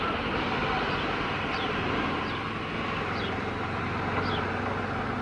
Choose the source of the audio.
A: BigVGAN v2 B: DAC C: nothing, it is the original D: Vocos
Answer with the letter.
C